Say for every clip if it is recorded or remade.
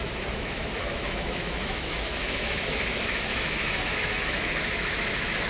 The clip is remade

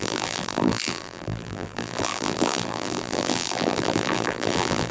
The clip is remade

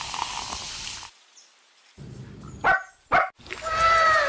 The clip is recorded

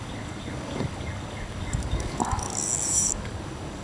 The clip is remade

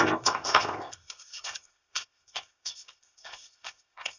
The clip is remade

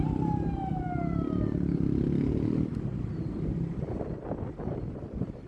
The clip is recorded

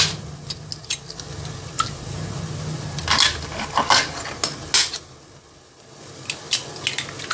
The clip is recorded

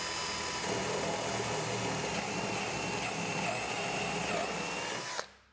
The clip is recorded